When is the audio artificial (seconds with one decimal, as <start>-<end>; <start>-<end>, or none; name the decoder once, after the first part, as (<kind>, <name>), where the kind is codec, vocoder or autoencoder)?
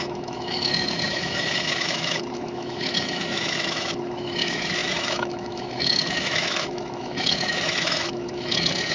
0.0-8.9 (autoencoder, DAC-VAE)